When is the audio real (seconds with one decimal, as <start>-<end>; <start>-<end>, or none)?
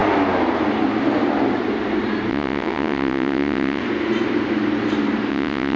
0.0-2.3; 3.8-5.3